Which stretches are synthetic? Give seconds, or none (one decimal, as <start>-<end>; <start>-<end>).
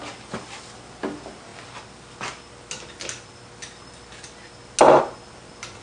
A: none